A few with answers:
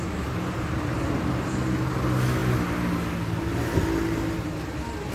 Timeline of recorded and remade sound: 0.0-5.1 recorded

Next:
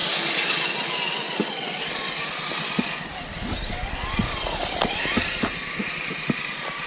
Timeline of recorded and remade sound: 0.0-6.9 recorded

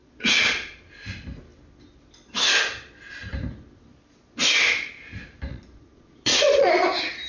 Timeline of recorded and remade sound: 0.0-0.8 remade; 0.8-5.5 recorded; 5.5-6.7 remade; 6.7-7.3 recorded

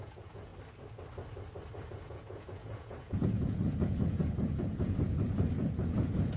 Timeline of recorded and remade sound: 0.0-0.5 remade; 0.5-1.9 recorded; 1.9-6.4 remade